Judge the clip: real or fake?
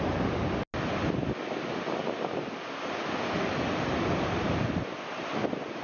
real